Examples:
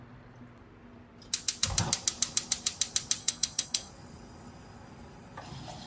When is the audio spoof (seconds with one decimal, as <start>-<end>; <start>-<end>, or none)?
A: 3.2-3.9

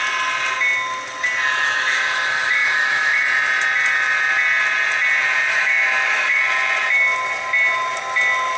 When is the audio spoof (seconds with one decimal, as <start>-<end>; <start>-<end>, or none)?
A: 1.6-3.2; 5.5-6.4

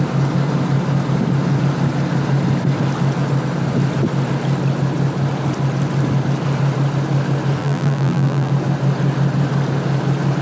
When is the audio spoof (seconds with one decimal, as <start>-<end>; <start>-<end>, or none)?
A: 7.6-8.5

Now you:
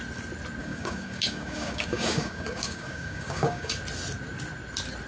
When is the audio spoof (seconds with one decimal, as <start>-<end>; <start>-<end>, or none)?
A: 0.6-3.7

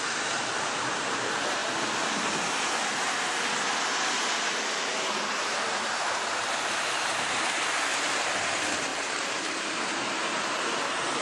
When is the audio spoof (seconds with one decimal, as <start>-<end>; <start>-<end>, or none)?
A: 0.0-1.6; 5.4-11.2

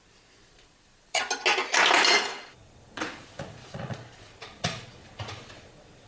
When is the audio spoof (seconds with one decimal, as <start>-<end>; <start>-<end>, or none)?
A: 0.4-1.2; 2.3-6.1